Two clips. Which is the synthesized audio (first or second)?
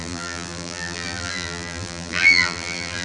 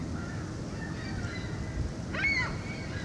first